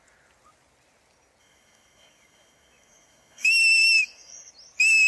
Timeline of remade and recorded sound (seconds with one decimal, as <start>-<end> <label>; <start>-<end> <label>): 0.0-1.4 recorded; 1.4-4.5 remade; 4.5-5.1 recorded